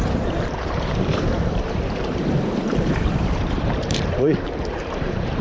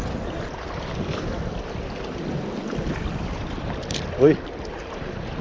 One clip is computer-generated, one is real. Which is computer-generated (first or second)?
first